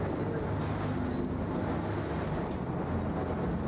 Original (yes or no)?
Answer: yes